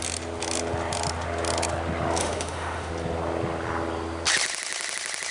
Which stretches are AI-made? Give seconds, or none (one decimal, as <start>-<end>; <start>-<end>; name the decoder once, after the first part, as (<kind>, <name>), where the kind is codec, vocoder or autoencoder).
2.2-2.9 (autoencoder, DAC-VAE)